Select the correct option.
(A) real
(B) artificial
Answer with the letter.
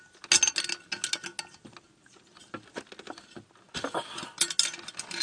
A